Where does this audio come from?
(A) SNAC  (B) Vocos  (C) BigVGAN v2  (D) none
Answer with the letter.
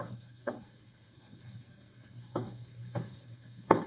A